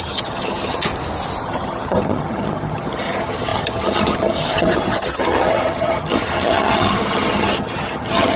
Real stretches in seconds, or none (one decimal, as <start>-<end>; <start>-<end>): 0.9-1.4